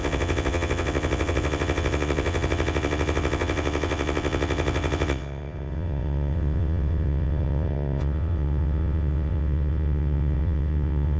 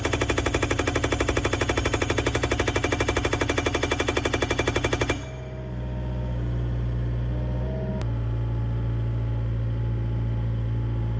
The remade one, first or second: first